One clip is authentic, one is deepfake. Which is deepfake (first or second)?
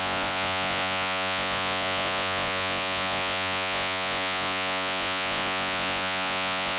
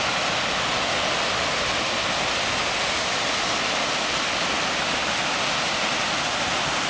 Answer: first